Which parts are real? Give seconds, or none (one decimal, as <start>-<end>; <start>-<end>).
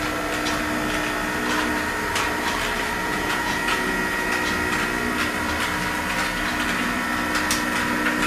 0.0-3.0; 4.3-8.3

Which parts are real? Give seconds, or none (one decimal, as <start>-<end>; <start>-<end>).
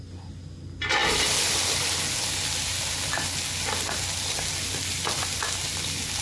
0.0-6.2